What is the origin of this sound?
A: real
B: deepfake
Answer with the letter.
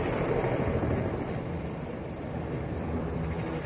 B